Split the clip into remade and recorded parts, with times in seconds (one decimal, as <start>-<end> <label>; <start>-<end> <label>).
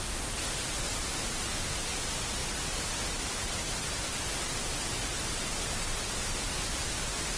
0.0-7.4 recorded